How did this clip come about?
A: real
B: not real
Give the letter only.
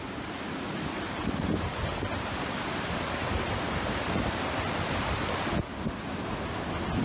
A